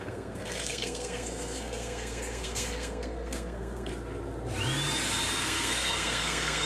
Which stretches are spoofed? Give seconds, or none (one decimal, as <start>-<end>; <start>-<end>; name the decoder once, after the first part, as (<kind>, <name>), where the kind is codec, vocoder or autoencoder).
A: 0.0-3.9 (codec, SNAC); 5.3-6.7